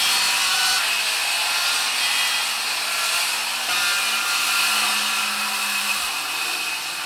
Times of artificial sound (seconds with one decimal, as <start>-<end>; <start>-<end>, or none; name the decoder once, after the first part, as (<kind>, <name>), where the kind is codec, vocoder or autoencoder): 1.2-2.2 (vocoder, BigVGAN v2); 5.4-6.3